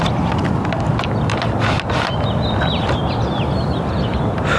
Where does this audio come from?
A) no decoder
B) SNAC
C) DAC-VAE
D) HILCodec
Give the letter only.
A